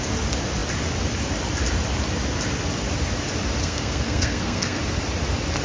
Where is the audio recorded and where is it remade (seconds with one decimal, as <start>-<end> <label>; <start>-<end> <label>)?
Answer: 0.0-3.6 recorded; 3.6-4.8 remade; 4.8-5.6 recorded